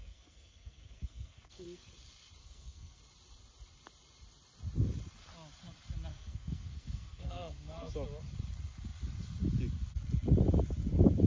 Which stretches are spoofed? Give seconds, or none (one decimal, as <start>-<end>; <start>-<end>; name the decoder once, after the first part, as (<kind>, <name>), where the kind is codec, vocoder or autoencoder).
0.0-1.9 (codec, SNAC); 2.4-3.0; 6.1-7.9